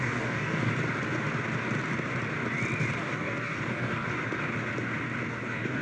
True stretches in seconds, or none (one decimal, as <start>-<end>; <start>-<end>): 0.7-3.0; 4.1-5.3